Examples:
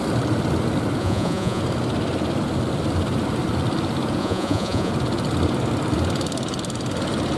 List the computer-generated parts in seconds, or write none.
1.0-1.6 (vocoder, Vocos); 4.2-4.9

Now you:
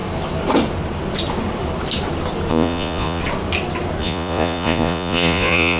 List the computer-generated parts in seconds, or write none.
2.5-3.2 (vocoder, Vocos); 4.0-5.8

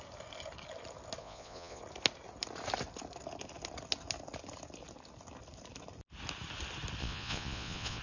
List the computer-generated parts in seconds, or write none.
1.2-1.8 (vocoder, Vocos); 7.0-8.0

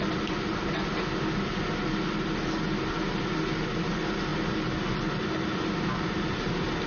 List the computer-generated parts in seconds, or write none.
none

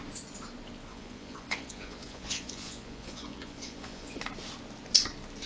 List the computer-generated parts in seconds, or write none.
0.9-4.2 (vocoder, Vocos)

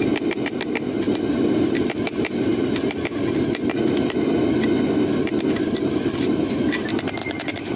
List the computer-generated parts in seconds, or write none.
7.2-7.8 (vocoder, Vocos)